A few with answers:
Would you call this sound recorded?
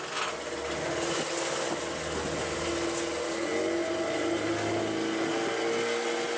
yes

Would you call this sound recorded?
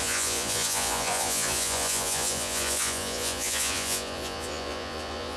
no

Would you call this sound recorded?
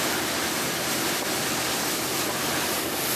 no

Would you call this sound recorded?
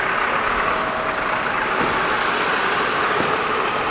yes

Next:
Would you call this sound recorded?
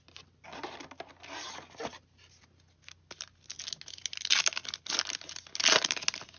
yes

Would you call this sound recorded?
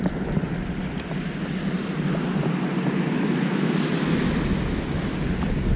yes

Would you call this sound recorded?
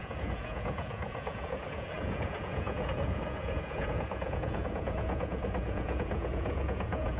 no